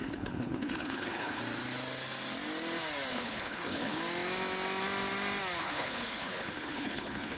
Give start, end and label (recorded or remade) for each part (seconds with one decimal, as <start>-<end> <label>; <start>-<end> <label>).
0.0-1.4 remade; 1.4-3.1 recorded; 3.1-4.0 remade; 4.0-5.6 recorded; 5.6-7.4 remade